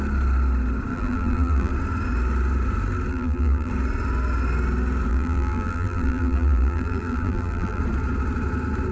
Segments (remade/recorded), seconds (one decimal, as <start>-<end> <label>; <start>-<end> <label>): 0.0-0.9 recorded; 0.9-1.7 remade; 1.7-3.1 recorded; 3.1-3.7 remade; 3.7-5.1 recorded; 5.1-7.8 remade; 7.8-8.9 recorded